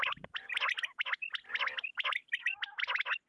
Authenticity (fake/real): real